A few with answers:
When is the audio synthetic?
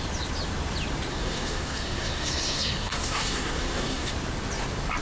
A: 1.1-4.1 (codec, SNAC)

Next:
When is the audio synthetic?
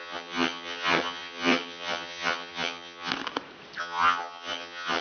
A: 0.0-3.1 (vocoder, HiFi-GAN); 3.8-5.0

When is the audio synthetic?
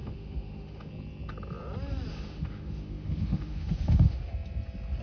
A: 0.0-0.9 (autoencoder, DAC-VAE); 2.1-4.3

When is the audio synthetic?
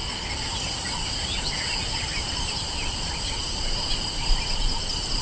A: 0.0-3.1 (vocoder, BigVGAN v2)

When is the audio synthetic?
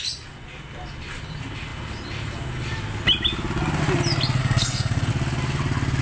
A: 4.4-5.1 (codec, SNAC)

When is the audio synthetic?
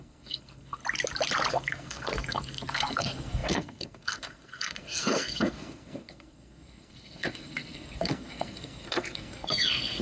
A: 0.0-0.8 (codec, SNAC); 1.5-10.0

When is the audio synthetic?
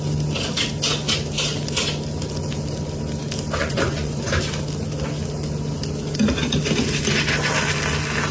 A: 3.6-4.3 (vocoder, Vocos)